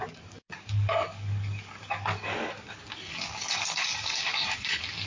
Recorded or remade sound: remade